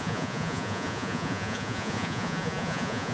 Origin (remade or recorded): remade